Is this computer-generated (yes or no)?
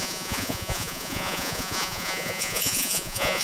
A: yes